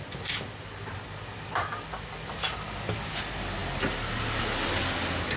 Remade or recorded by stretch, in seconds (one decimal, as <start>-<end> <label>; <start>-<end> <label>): 0.0-5.4 recorded